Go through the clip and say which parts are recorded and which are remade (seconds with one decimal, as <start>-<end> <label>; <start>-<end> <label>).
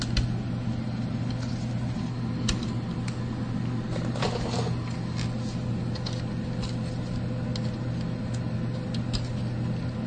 0.0-10.1 recorded